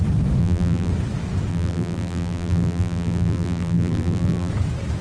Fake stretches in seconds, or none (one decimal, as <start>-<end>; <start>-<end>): 0.4-0.9; 1.5-4.5